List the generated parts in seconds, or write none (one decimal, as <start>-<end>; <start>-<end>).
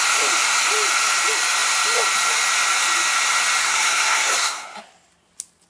3.6-4.8